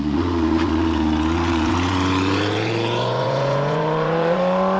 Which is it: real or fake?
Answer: fake